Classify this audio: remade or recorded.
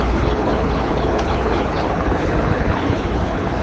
remade